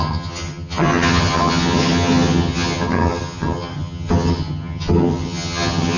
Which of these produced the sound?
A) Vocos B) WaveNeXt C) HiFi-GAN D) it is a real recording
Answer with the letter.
C